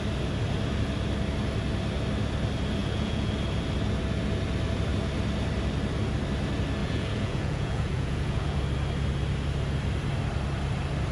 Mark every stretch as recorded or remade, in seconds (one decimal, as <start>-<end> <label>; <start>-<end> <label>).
0.0-2.8 recorded; 2.8-3.3 remade; 3.3-6.8 recorded; 6.8-8.6 remade; 8.6-11.1 recorded